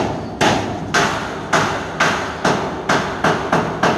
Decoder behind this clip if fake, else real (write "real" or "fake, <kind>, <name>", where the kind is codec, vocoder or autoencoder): real